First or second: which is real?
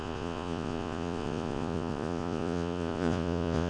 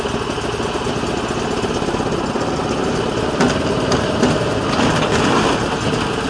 second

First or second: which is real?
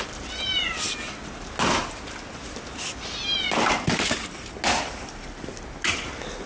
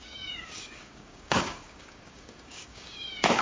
first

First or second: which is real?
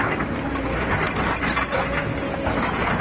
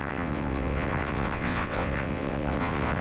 first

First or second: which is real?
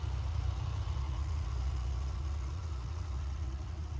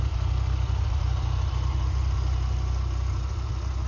second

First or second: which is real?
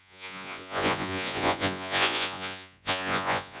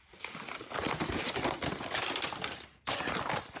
second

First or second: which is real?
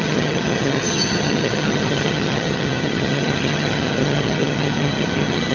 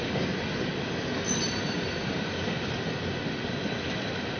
second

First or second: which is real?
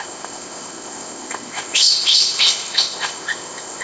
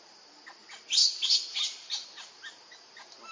second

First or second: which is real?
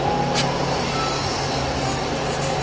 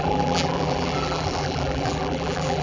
first